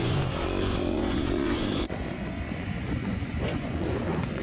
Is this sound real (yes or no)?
no